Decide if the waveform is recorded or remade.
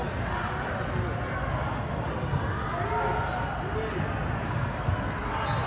recorded